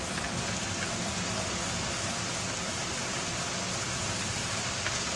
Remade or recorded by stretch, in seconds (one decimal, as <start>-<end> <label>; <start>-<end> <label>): 0.0-2.8 recorded; 2.8-3.4 remade; 3.4-5.2 recorded